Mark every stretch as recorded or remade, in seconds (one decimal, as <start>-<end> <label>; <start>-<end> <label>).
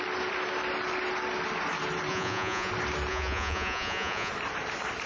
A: 0.0-2.1 recorded; 2.1-2.7 remade; 2.7-3.1 recorded; 3.1-4.3 remade; 4.3-5.1 recorded